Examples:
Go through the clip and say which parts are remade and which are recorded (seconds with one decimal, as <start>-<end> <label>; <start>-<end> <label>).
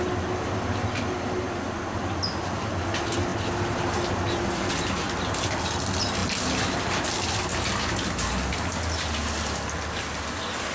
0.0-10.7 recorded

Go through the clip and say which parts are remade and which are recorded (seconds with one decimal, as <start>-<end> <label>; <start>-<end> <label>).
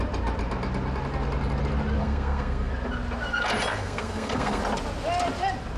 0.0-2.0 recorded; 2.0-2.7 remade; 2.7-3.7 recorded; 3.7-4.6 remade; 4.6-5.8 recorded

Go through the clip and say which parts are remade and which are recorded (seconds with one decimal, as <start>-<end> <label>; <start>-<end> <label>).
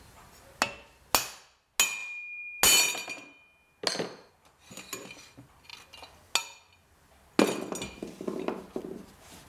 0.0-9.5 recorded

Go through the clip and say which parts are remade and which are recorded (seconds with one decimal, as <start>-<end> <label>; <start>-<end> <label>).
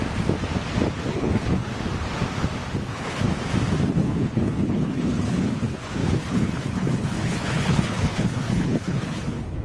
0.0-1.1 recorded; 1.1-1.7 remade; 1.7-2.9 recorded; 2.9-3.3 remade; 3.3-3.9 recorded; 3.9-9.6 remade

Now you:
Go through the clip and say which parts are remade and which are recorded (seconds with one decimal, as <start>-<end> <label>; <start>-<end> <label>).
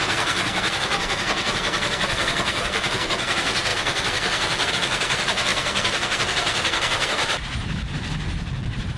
0.0-7.2 remade; 7.2-9.0 recorded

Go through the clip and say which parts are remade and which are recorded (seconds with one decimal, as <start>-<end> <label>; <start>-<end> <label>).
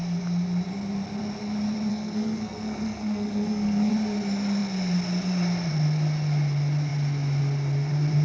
0.0-1.9 recorded; 1.9-3.9 remade; 3.9-8.2 recorded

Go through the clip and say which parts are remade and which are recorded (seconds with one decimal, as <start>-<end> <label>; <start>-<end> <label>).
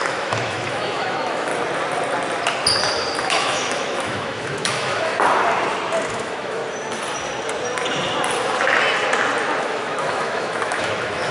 0.0-1.5 remade; 1.5-3.2 recorded; 3.2-5.1 remade; 5.1-6.1 recorded; 6.1-6.6 remade; 6.6-9.6 recorded; 9.6-11.3 remade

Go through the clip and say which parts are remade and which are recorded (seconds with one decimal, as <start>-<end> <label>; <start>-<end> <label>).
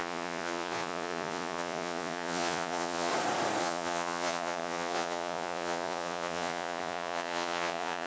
0.0-3.1 remade; 3.1-3.6 recorded; 3.6-8.1 remade